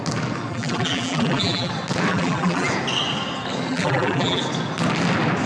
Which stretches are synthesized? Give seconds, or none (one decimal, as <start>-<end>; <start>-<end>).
0.5-1.7; 2.1-2.7; 3.7-4.4